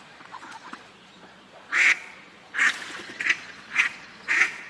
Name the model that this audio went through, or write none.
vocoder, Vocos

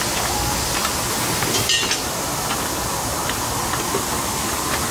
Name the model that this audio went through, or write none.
none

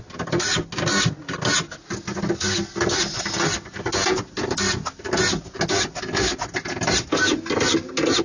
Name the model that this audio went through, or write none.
none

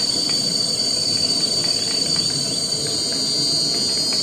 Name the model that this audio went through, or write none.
none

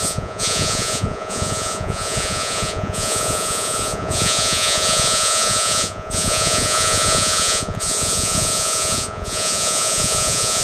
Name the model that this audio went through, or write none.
vocoder, Vocos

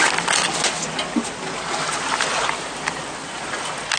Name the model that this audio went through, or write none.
none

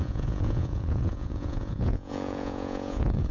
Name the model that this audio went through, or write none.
vocoder, Vocos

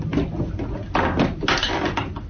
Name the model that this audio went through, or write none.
none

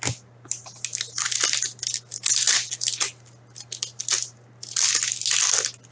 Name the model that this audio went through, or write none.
none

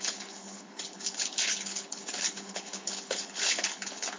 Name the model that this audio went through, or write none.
codec, HILCodec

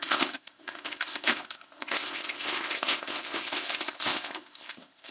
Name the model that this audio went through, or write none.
codec, ZipCodec